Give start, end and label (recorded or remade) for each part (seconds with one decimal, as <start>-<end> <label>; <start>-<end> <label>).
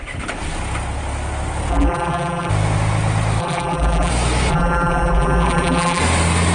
0.0-1.7 recorded; 1.7-2.5 remade; 2.5-3.4 recorded; 3.4-4.1 remade; 4.1-4.5 recorded; 4.5-6.0 remade; 6.0-6.5 recorded